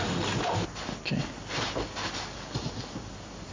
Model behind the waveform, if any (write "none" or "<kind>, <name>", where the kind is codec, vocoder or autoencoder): none